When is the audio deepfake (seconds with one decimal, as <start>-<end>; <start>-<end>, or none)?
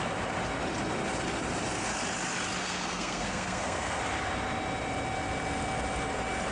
2.6-4.0